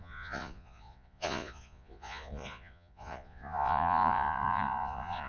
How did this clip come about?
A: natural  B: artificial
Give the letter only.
B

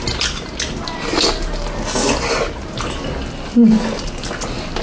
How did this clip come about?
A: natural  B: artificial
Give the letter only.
A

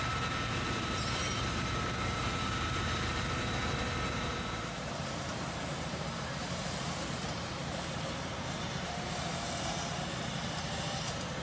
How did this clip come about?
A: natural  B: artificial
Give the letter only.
B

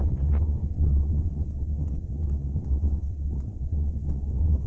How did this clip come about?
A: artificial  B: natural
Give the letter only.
A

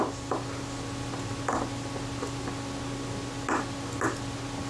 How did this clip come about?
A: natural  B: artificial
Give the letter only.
A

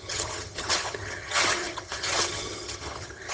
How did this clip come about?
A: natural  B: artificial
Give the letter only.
B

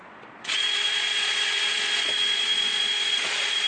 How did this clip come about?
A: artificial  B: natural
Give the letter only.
A